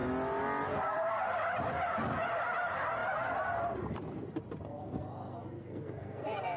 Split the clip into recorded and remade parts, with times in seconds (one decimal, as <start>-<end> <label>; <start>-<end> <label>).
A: 0.0-4.7 recorded; 4.7-6.6 remade